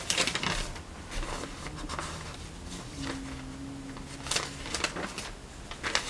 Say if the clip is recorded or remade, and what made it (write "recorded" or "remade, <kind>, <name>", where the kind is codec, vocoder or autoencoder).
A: recorded